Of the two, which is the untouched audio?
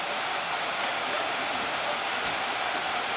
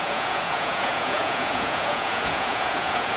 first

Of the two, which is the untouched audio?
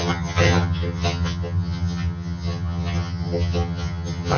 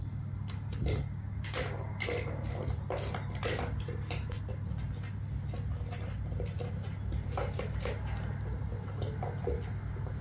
second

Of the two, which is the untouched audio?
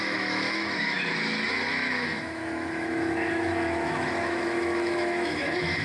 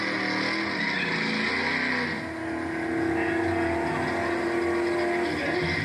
second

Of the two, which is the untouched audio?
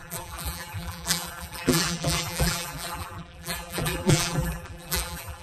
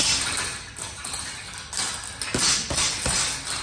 second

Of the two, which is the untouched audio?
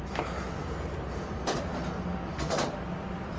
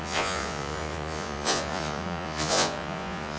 first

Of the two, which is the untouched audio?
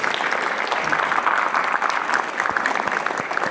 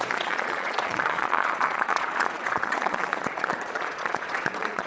first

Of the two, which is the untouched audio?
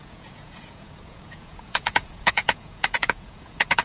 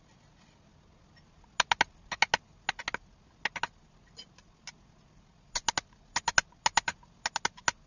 second